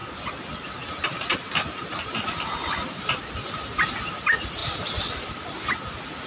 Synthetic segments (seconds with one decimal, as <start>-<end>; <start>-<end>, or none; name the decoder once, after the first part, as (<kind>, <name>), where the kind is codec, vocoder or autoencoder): 0.0-0.7 (vocoder, BigVGAN v2); 4.6-6.3